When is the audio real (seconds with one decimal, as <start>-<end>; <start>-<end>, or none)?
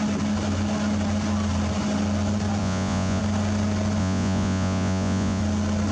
0.0-2.6; 3.2-4.0; 5.4-5.9